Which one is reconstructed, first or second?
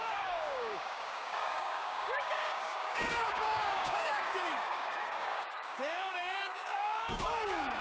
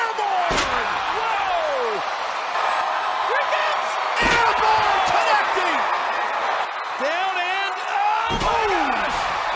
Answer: first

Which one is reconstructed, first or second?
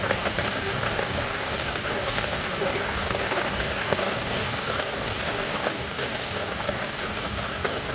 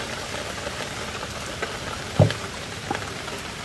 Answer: first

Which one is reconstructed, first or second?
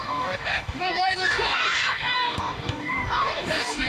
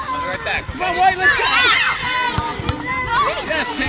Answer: first